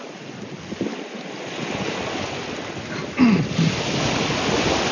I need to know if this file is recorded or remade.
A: recorded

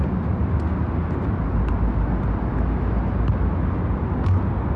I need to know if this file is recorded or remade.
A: recorded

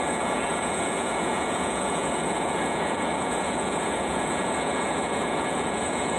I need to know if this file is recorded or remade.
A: remade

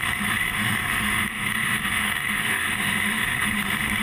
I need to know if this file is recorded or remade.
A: remade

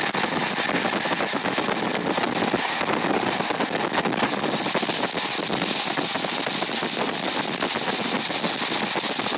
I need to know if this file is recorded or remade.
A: recorded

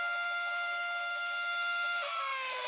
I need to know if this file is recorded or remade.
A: remade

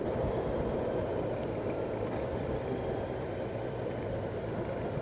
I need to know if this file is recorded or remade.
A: recorded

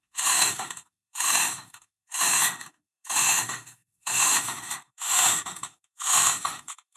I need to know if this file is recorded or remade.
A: remade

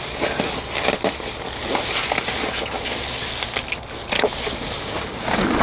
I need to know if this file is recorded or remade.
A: recorded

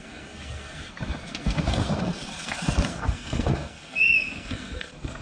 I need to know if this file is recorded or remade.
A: remade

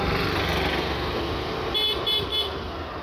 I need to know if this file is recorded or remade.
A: recorded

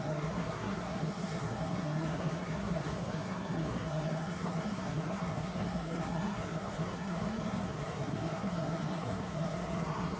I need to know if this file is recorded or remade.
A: remade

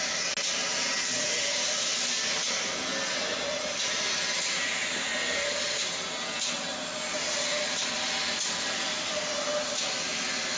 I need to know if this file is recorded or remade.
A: recorded